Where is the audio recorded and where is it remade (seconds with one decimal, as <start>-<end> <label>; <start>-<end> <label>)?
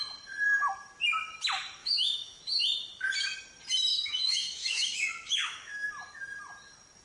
0.0-1.8 recorded; 1.8-2.4 remade; 2.4-3.9 recorded; 3.9-5.9 remade; 5.9-7.0 recorded